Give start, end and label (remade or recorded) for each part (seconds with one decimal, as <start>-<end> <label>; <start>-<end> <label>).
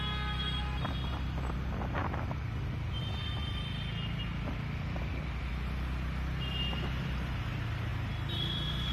0.0-8.9 recorded